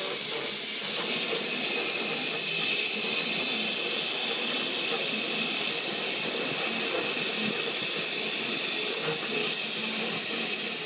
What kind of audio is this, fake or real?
real